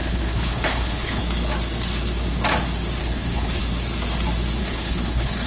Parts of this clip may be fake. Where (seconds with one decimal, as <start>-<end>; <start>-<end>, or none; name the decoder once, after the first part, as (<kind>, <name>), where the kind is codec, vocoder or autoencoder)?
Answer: 0.0-1.2 (codec, HILCodec); 3.0-3.6; 4.6-5.5